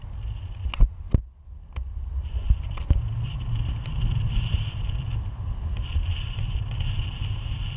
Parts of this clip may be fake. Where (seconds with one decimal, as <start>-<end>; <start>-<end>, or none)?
none